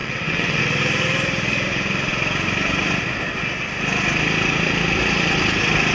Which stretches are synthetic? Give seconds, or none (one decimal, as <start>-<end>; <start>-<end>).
0.0-0.6

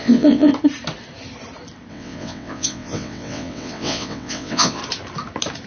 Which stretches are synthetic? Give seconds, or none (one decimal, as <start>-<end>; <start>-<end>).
0.0-0.5; 1.9-4.8

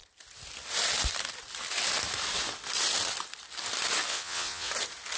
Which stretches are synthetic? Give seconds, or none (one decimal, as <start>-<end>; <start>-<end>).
4.1-4.7

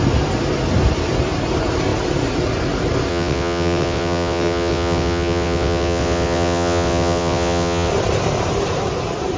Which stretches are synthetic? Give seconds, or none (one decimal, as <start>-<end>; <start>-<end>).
3.1-7.9

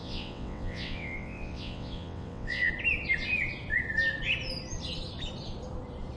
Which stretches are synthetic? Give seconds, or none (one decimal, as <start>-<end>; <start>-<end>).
0.0-2.7

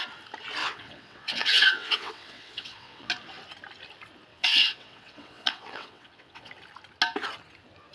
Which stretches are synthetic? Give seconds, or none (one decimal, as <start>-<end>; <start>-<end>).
0.6-3.1; 4.3-6.5

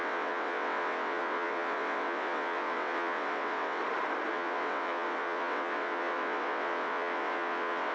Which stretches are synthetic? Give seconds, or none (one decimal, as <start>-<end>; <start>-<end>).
0.0-3.8; 4.3-7.9